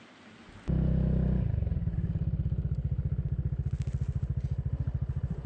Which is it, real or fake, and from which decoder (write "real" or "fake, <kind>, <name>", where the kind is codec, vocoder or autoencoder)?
fake, vocoder, BigVGAN v2